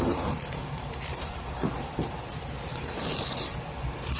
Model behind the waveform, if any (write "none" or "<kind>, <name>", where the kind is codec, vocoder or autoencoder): vocoder, BigVGAN v2